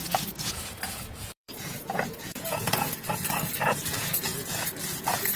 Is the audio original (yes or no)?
no